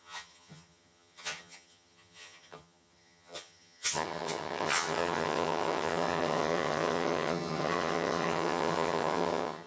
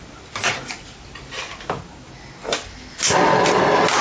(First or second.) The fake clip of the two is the first